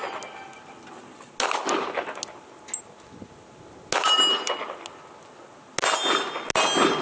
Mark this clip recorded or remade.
recorded